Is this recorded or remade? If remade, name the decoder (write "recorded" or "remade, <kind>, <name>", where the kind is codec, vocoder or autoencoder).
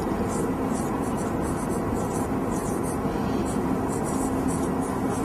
recorded